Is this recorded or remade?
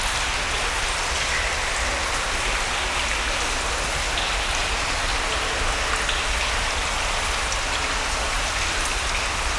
recorded